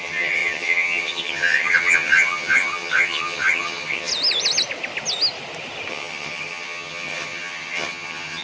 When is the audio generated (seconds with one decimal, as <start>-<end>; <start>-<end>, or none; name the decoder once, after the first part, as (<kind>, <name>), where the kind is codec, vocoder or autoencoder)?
0.0-4.1 (vocoder, HiFi-GAN); 5.9-8.4